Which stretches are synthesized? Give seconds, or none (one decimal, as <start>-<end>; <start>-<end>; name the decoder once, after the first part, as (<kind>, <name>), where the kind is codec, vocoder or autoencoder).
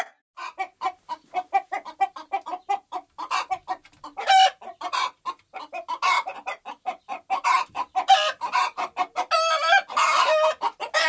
none